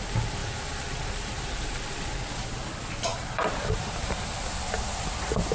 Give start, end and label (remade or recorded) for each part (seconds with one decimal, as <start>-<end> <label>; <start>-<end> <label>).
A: 0.0-0.4 recorded; 0.4-1.8 remade; 1.8-3.1 recorded; 3.1-4.2 remade; 4.2-5.5 recorded